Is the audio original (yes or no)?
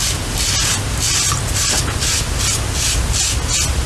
yes